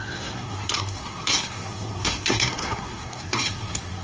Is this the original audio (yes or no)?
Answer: no